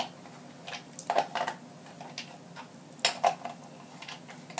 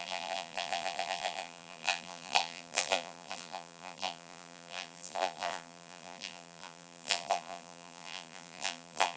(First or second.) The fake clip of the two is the second